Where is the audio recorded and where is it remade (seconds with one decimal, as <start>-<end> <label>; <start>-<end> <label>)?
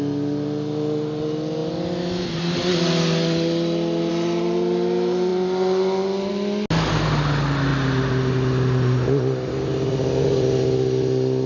0.0-11.5 recorded